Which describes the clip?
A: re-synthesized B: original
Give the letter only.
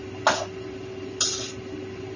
B